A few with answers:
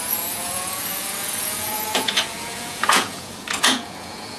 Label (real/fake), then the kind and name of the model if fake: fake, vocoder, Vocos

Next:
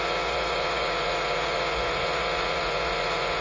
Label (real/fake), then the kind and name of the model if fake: fake, vocoder, Vocos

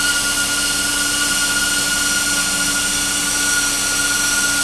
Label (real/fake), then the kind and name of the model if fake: real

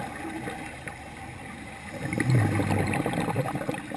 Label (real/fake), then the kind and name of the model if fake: real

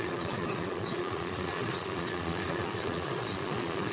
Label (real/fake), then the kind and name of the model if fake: fake, vocoder, Vocos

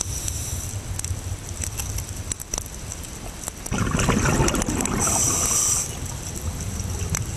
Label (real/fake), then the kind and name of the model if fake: real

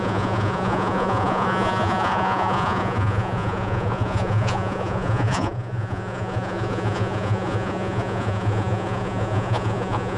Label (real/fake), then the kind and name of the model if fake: fake, vocoder, Vocos